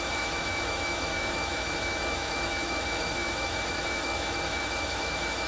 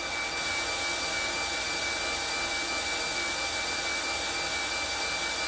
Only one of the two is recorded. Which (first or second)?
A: second